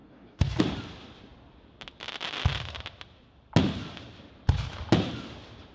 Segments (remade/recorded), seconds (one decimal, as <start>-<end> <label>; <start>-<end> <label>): 0.0-0.6 remade; 0.6-5.7 recorded